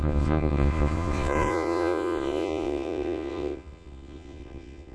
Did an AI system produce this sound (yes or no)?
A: yes